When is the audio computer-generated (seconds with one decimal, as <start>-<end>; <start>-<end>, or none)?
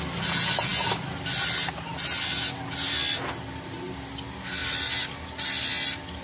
none